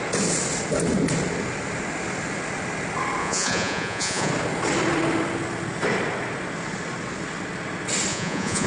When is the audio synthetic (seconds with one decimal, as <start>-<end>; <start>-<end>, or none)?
3.2-4.3; 8.1-8.7